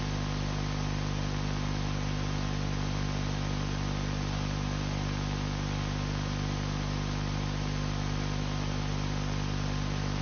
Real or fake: real